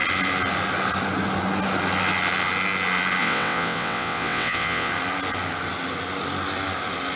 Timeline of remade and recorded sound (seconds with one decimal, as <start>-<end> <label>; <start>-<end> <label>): 0.0-3.2 recorded; 3.2-4.9 remade; 4.9-7.2 recorded